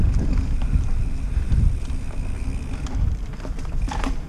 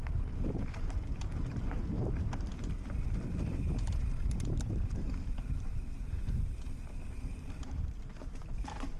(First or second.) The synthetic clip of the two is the second